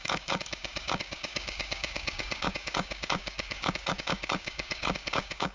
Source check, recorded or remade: remade